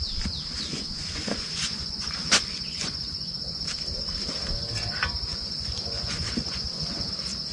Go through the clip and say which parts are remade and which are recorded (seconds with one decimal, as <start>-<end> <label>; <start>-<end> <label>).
0.0-0.7 recorded; 0.7-3.6 remade; 3.6-5.3 recorded; 5.3-7.1 remade; 7.1-7.5 recorded